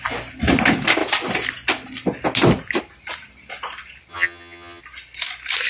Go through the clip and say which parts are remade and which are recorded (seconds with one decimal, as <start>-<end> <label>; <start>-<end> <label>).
0.0-4.1 recorded; 4.1-4.8 remade; 4.8-5.7 recorded